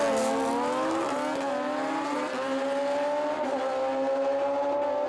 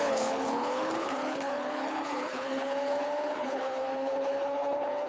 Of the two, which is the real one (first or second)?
first